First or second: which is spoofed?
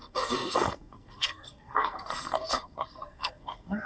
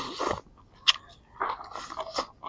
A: first